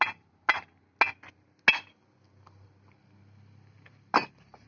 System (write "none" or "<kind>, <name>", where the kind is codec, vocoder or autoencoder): none